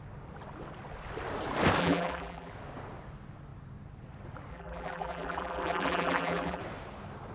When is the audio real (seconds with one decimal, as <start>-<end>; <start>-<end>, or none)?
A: 0.0-1.8; 2.5-4.5; 6.6-7.3